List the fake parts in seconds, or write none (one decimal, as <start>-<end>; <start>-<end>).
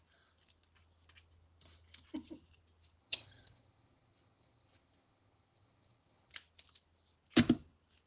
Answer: 3.0-6.3